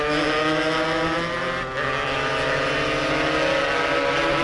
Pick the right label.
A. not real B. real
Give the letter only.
B